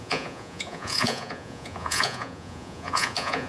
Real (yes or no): no